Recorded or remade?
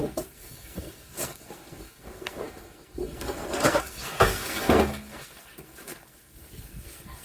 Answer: remade